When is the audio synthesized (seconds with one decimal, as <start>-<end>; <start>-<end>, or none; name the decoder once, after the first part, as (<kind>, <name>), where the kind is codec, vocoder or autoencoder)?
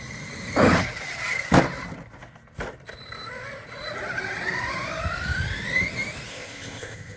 6.3-7.2 (codec, ZipCodec)